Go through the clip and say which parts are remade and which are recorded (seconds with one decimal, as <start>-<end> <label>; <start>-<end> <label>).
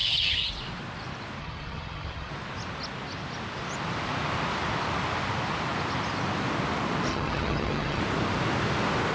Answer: 0.0-0.5 remade; 0.5-1.4 recorded; 1.4-2.3 remade; 2.3-7.1 recorded; 7.1-8.0 remade; 8.0-9.1 recorded